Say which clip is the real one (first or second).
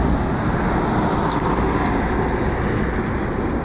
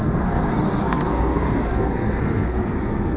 first